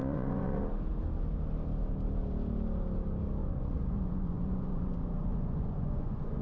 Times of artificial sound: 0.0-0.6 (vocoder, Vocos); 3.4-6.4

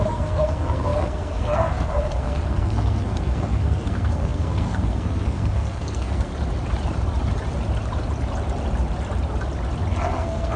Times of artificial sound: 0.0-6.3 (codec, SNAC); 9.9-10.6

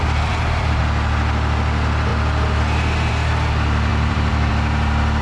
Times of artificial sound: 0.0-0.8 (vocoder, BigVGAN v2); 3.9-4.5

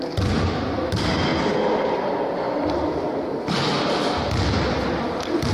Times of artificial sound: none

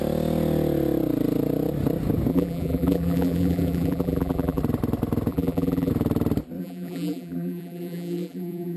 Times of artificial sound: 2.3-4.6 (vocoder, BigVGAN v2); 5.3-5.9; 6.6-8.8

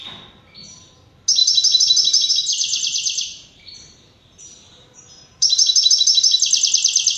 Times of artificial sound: 1.4-2.3 (vocoder, BigVGAN v2); 2.7-5.9